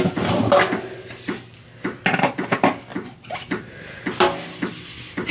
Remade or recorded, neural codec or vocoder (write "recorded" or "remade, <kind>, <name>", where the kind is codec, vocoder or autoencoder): recorded